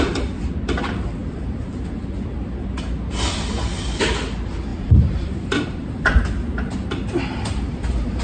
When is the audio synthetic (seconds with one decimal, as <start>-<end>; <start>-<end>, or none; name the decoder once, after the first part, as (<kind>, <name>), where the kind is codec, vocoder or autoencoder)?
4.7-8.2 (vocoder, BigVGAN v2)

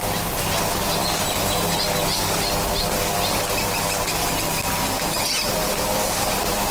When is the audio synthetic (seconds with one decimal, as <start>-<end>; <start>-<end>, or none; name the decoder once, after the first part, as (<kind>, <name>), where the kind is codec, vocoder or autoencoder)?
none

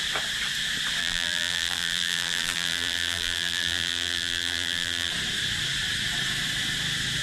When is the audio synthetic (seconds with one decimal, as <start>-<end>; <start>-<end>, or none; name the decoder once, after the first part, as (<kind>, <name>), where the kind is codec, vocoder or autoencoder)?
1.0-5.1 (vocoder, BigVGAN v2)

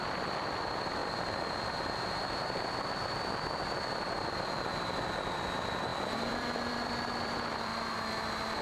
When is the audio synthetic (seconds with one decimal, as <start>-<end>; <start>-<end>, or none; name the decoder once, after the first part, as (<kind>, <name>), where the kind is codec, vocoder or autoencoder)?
0.0-1.0 (vocoder, BigVGAN v2); 4.3-7.7